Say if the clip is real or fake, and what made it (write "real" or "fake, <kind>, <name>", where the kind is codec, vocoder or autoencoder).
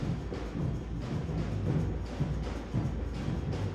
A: real